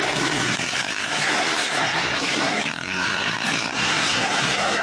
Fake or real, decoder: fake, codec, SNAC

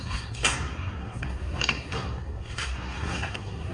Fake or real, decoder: fake, codec, SNAC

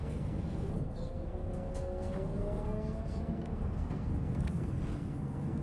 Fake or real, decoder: fake, codec, SNAC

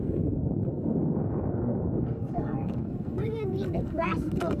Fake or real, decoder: fake, codec, SNAC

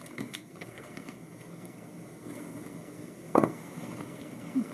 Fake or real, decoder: fake, codec, SNAC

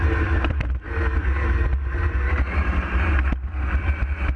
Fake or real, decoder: real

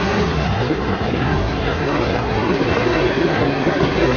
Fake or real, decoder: fake, codec, SNAC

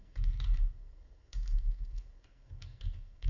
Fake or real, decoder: fake, codec, SNAC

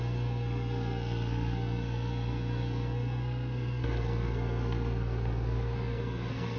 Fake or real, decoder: fake, codec, SNAC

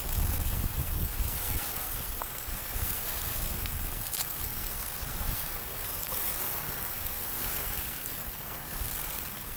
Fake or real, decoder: fake, codec, SNAC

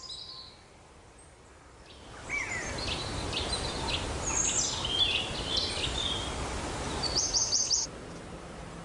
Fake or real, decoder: real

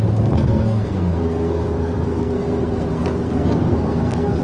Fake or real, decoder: fake, codec, SNAC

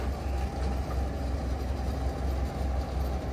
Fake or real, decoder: real